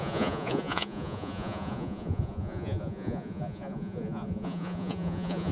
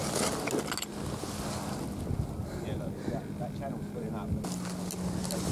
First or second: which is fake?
first